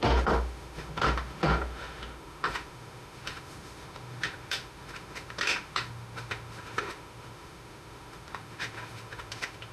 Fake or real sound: fake